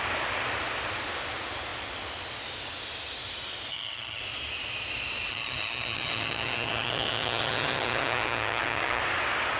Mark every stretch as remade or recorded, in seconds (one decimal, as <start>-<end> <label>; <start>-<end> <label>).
0.0-3.7 recorded; 3.7-4.2 remade; 4.2-5.3 recorded; 5.3-9.0 remade; 9.0-9.6 recorded